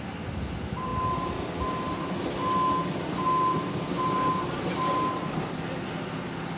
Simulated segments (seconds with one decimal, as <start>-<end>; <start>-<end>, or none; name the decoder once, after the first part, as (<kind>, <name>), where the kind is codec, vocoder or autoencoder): none